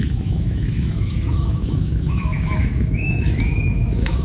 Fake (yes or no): yes